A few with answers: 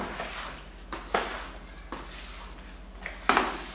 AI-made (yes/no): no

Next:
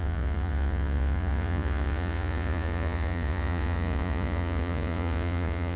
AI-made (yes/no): yes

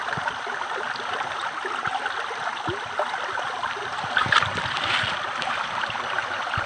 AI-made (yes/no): no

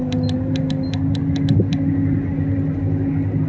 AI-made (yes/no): no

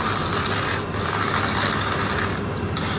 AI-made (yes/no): no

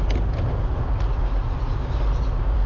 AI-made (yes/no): no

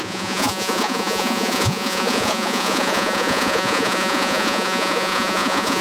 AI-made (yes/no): yes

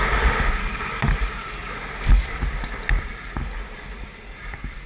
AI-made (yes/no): no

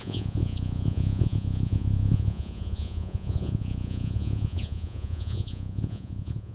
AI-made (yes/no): yes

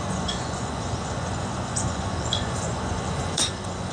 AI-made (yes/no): yes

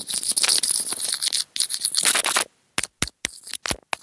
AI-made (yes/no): no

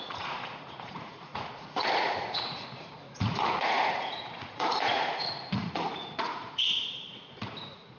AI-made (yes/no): yes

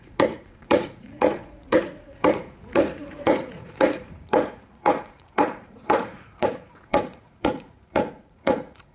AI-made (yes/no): yes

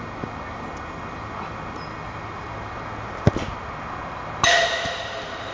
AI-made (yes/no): no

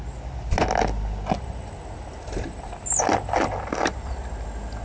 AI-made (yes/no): no